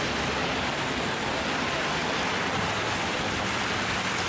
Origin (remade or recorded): recorded